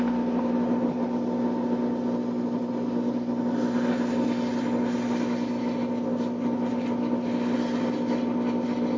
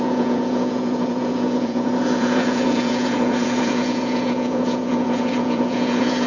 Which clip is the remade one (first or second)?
second